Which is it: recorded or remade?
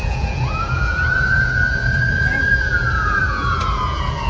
remade